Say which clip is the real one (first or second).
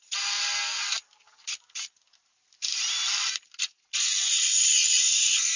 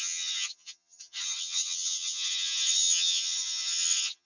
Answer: first